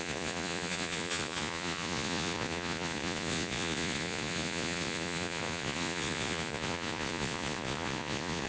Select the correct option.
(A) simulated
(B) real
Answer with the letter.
A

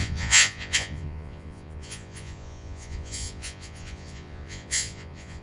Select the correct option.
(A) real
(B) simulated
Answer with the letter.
B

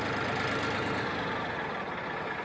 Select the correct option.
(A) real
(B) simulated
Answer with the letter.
A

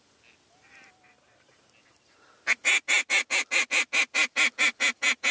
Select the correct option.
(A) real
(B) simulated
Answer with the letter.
A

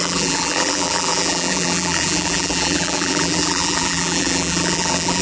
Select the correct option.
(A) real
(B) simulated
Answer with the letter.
B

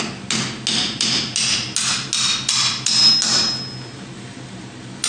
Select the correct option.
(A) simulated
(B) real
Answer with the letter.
B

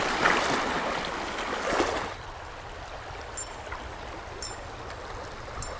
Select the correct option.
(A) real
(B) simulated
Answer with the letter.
A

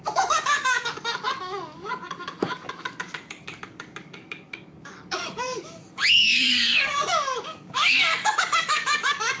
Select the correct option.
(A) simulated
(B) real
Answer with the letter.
A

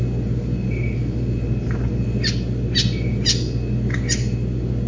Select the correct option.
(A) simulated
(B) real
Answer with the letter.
B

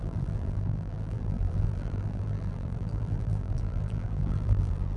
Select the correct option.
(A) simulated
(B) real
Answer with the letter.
A